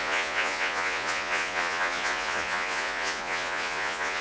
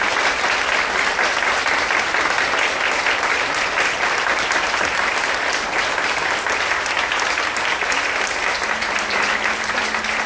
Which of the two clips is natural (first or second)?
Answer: second